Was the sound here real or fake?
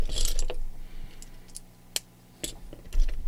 real